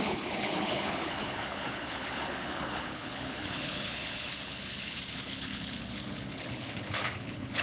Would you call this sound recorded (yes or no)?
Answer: no